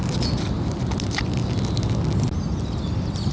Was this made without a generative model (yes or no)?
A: yes